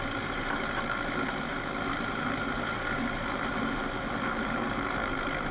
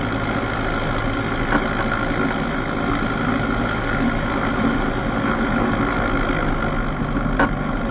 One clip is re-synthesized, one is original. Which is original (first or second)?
second